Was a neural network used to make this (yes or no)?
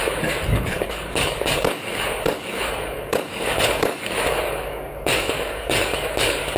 yes